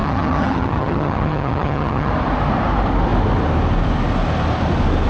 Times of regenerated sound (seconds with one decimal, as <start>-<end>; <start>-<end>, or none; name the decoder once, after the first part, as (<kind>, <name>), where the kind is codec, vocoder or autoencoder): 0.0-2.1 (vocoder, HiFi-GAN)